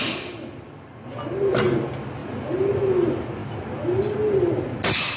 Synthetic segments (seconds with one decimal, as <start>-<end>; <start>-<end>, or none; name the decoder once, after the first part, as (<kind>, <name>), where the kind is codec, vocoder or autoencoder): none